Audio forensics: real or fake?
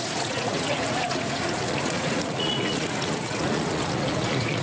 fake